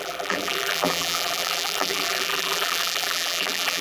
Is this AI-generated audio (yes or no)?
yes